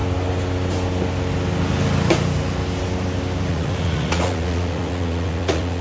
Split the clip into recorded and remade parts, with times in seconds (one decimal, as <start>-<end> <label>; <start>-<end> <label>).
0.0-3.5 recorded; 3.5-5.8 remade